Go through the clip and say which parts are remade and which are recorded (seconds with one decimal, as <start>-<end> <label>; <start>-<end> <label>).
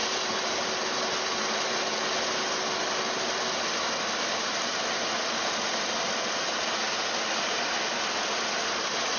0.0-9.2 recorded